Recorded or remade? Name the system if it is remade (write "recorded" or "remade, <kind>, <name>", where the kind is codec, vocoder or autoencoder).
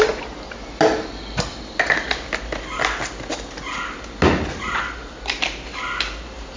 recorded